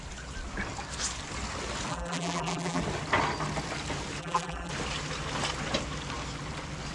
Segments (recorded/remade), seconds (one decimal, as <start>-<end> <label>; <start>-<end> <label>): 0.0-1.9 recorded; 1.9-2.8 remade; 2.8-4.2 recorded; 4.2-4.7 remade; 4.7-6.9 recorded

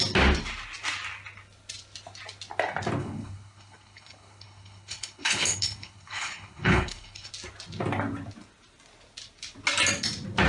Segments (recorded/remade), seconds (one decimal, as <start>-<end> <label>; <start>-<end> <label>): 0.0-3.0 recorded; 3.0-7.3 remade; 7.3-10.5 recorded

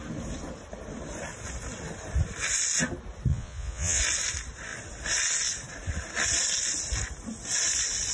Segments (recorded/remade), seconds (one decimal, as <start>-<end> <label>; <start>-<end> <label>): 0.0-3.3 recorded; 3.3-4.0 remade; 4.0-8.1 recorded

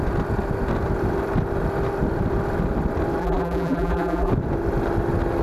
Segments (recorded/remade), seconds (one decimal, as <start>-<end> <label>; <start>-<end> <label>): 0.0-3.2 recorded; 3.2-4.3 remade; 4.3-5.4 recorded

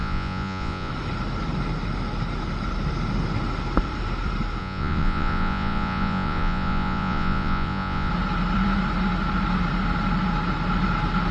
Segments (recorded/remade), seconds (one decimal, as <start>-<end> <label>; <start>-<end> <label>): 0.0-0.9 remade; 0.9-4.6 recorded; 4.6-8.1 remade; 8.1-11.3 recorded